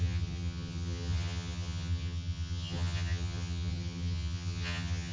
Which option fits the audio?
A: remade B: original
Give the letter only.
A